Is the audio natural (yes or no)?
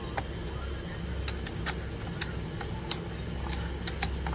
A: yes